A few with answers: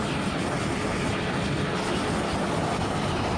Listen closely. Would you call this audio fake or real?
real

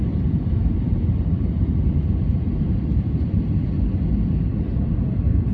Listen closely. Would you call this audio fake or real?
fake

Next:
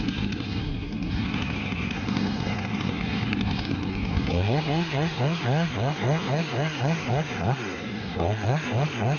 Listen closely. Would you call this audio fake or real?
fake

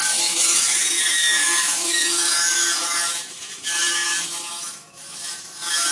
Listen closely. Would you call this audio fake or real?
fake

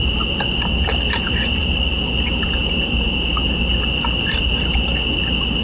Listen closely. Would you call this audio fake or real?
real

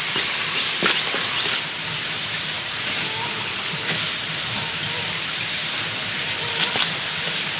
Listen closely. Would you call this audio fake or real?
real